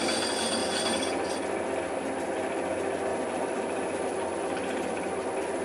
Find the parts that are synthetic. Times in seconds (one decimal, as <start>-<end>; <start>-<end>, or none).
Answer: 3.1-5.6